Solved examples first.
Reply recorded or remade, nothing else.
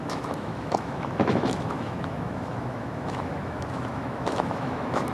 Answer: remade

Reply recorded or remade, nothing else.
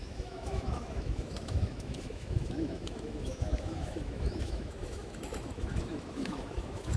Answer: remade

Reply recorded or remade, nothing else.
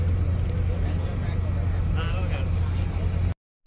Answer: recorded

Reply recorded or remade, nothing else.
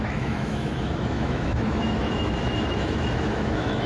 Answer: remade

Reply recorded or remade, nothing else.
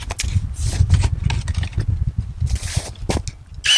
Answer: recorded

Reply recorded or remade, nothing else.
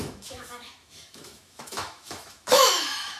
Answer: remade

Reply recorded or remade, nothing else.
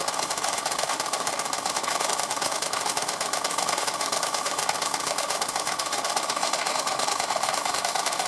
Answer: remade